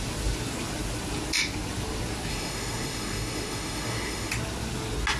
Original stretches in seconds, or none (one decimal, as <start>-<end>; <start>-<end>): 0.0-2.3; 4.3-5.2